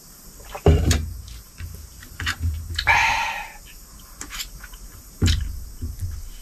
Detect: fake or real fake